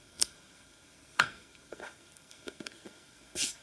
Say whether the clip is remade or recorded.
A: remade